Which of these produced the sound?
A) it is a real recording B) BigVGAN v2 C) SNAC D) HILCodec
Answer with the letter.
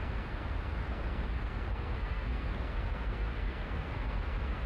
C